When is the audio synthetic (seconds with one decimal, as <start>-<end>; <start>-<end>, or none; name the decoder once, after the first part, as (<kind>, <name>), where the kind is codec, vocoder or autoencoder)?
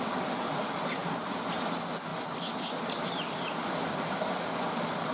1.0-1.5 (vocoder, BigVGAN v2)